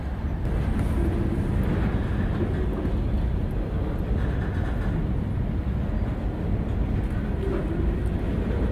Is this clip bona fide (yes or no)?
yes